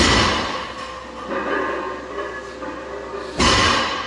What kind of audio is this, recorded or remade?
recorded